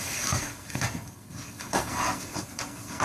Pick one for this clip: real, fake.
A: fake